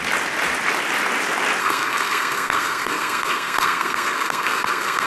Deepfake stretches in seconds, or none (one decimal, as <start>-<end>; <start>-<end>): 1.6-5.1